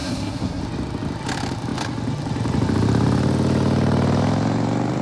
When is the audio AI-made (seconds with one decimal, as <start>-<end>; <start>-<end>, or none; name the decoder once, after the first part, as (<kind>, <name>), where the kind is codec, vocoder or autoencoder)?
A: 0.0-0.6 (codec, SNAC)